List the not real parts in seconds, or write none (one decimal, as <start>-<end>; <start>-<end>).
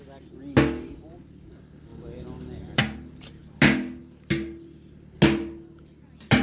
none